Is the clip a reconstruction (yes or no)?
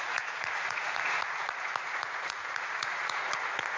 yes